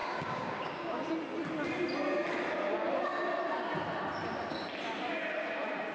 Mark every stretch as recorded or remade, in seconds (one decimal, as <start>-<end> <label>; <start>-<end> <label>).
0.0-1.0 remade; 1.0-5.9 recorded